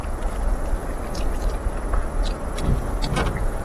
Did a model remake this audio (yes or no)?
no